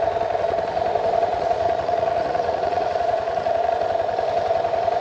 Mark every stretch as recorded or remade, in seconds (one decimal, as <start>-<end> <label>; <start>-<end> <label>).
0.0-1.3 recorded; 1.3-3.7 remade; 3.7-5.0 recorded